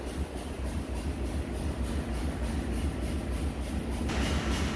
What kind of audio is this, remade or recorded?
recorded